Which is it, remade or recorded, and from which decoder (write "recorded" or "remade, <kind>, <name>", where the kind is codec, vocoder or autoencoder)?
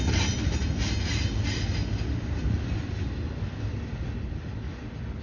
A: recorded